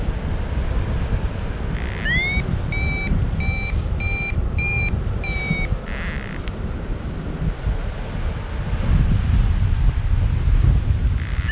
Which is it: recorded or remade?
recorded